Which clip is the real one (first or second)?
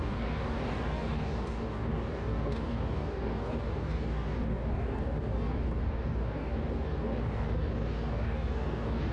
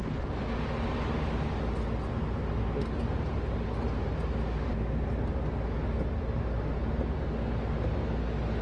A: second